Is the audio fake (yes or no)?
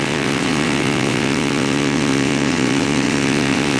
yes